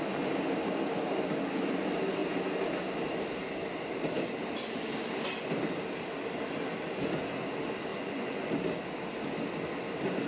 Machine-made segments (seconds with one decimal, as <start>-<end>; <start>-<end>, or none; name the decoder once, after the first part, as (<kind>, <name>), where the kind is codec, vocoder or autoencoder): 7.9-8.5 (vocoder, Vocos)